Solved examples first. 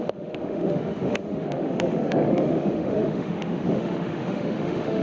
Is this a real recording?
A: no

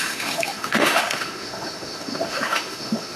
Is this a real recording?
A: no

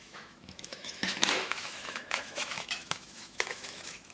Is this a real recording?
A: no